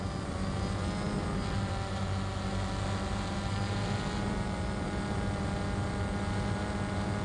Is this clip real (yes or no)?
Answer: yes